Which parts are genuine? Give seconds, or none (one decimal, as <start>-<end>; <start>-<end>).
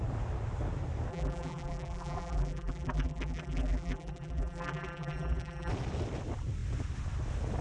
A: 0.0-1.1; 5.7-7.6